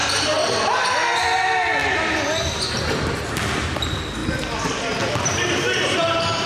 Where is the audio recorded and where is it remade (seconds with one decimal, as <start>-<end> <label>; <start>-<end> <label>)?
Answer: 0.0-6.5 recorded